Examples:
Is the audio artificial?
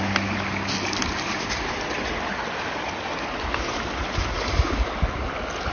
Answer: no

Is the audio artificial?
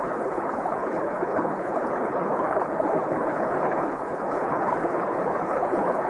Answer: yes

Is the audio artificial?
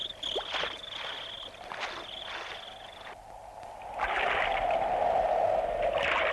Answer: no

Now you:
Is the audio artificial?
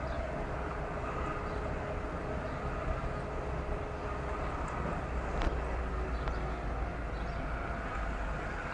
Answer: no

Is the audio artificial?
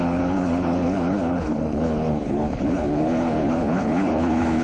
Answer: yes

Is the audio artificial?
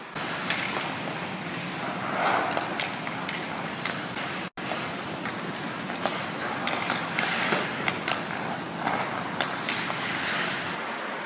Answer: no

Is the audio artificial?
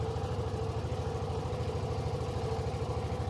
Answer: no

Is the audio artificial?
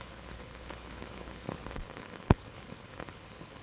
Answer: yes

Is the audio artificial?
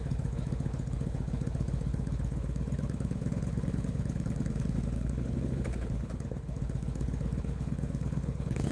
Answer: yes